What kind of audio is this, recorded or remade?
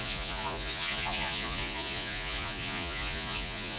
remade